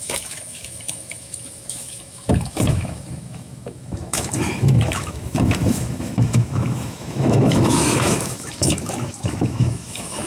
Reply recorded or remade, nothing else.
remade